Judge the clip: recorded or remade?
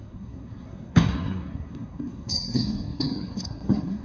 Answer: remade